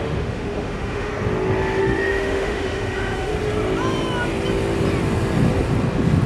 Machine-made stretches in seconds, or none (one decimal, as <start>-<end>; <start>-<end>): 0.0-1.1; 1.8-3.3